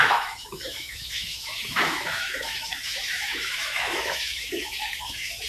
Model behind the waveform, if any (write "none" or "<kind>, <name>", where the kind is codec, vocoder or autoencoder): autoencoder, DAC-VAE